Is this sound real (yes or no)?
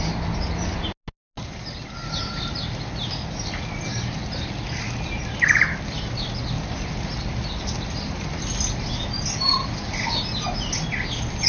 yes